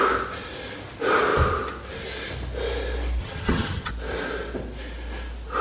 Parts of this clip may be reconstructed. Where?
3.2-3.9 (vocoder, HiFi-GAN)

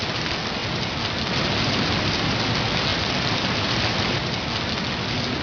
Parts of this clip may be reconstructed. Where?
none

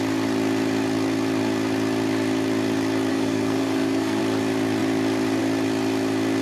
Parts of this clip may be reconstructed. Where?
3.1-4.2 (codec, SNAC)

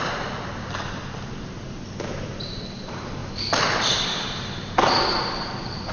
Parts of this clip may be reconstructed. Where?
none